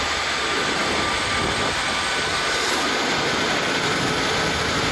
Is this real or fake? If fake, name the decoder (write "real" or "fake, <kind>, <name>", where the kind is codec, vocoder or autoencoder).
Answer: real